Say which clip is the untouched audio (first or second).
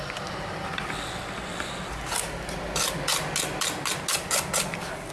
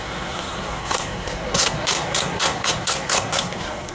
first